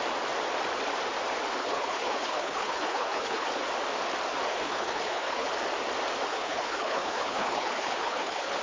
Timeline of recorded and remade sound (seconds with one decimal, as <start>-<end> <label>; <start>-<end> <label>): 0.0-1.6 recorded; 1.6-3.5 remade; 3.5-4.5 recorded; 4.5-5.5 remade; 5.5-6.3 recorded; 6.3-8.6 remade